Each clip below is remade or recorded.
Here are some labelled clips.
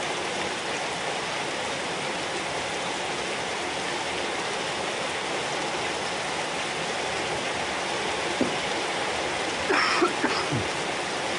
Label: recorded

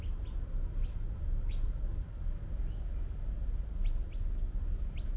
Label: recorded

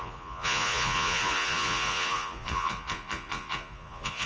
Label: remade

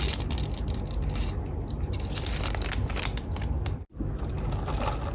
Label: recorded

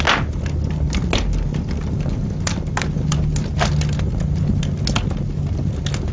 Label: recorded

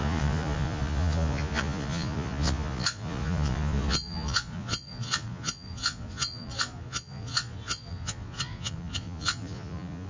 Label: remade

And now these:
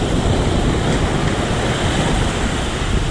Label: recorded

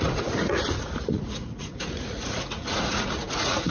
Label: remade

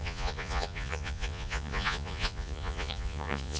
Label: remade